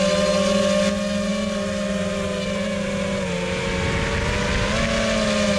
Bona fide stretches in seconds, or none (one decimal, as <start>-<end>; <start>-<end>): 0.0-5.6